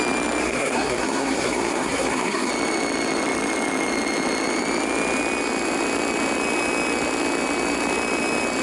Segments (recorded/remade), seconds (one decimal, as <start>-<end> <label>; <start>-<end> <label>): 0.0-0.4 recorded; 0.4-2.5 remade; 2.5-8.6 recorded

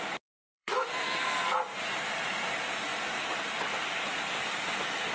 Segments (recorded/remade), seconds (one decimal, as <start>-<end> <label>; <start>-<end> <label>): 0.0-0.5 recorded; 0.5-1.8 remade; 1.8-5.1 recorded